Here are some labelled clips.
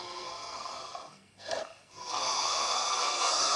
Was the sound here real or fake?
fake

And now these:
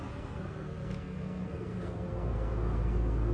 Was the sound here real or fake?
fake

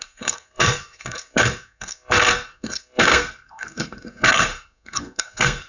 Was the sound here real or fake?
fake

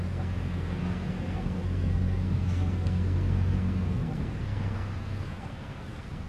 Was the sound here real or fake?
fake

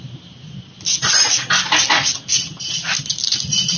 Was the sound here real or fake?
real